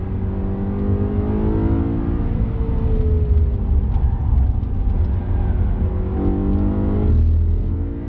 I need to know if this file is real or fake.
real